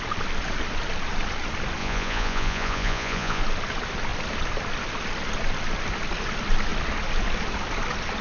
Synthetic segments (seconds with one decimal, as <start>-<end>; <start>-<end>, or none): 1.8-3.4